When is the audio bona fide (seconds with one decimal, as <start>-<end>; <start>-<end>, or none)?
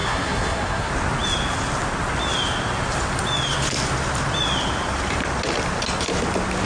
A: 0.9-6.7